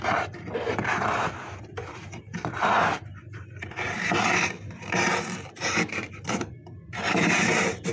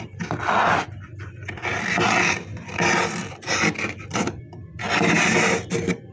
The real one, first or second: second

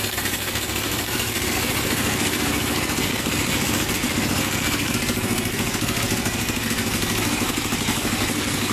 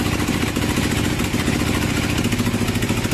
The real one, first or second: second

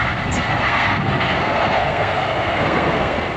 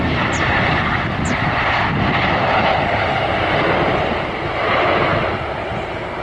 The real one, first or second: second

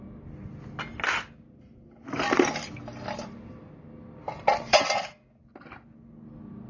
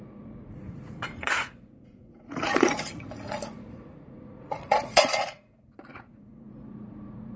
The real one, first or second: first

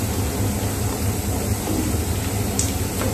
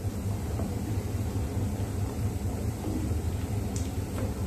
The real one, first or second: first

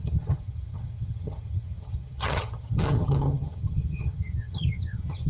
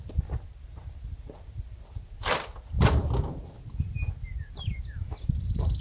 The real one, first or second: second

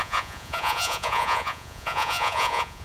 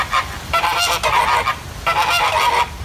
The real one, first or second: second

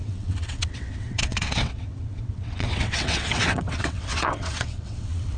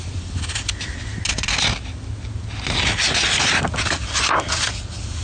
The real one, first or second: second